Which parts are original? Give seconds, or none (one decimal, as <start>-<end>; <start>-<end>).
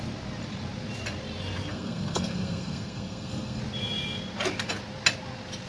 0.0-1.7; 3.6-5.7